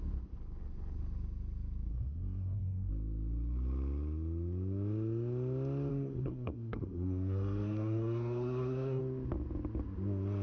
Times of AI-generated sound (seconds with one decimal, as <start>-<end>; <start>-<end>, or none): 1.9-2.9; 5.9-9.0